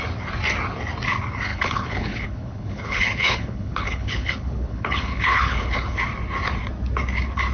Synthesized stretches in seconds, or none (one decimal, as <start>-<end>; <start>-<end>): 1.5-6.0